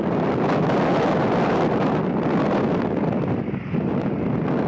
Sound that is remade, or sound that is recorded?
recorded